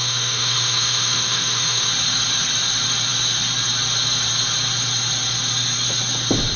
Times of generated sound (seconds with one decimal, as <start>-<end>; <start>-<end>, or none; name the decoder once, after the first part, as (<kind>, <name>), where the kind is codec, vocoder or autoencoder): 0.0-1.9 (autoencoder, DAC-VAE)